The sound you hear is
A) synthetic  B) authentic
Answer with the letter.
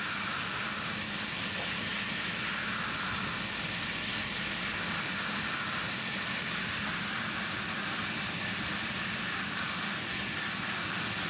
B